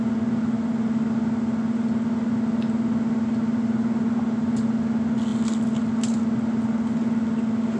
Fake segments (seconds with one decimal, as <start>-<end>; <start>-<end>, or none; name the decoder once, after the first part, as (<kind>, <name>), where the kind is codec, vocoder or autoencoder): none